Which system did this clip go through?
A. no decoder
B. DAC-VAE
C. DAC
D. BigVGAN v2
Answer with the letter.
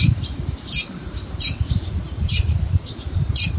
D